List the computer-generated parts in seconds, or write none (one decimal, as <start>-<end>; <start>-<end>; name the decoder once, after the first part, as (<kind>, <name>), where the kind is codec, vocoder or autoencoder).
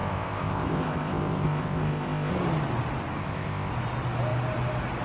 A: 0.0-2.3 (codec, ZipCodec); 3.2-3.7